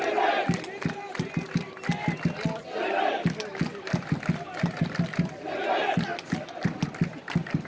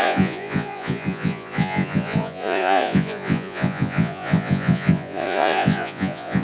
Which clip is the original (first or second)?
first